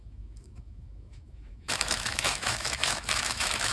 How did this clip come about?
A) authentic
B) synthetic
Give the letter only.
B